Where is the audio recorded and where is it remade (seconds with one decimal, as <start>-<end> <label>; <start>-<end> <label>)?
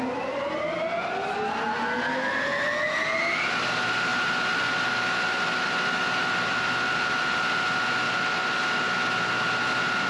0.0-4.1 recorded; 4.1-4.9 remade; 4.9-6.2 recorded; 6.2-7.6 remade; 7.6-10.1 recorded